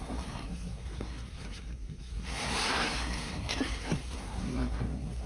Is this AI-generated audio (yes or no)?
yes